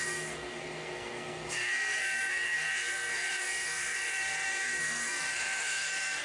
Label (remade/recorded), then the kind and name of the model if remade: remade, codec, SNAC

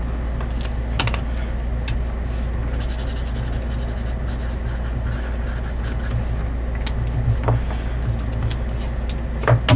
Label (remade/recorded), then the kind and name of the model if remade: recorded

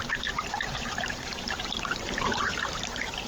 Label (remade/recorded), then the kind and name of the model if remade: remade, vocoder, BigVGAN v2